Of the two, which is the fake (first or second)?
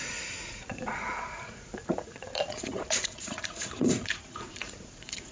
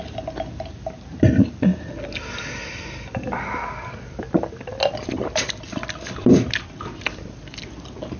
first